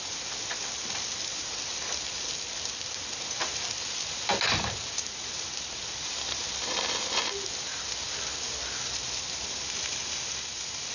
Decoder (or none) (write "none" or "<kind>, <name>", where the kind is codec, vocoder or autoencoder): vocoder, BigVGAN v2